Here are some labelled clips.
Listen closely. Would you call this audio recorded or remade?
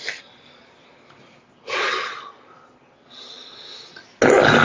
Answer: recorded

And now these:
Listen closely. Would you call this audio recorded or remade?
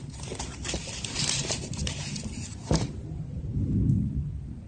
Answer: remade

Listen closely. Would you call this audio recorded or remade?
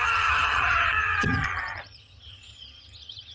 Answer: remade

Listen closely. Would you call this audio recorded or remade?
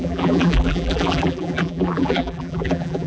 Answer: remade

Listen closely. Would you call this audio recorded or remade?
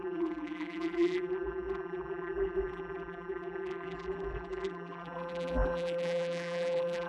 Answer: remade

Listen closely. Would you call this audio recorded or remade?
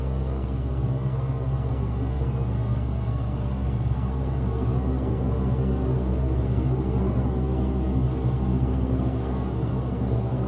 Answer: remade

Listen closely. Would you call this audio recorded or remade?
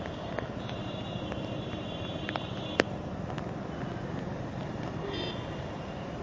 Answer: recorded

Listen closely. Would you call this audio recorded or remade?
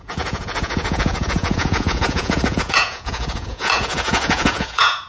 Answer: remade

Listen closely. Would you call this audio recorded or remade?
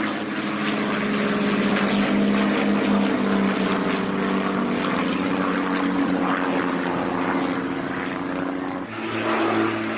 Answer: recorded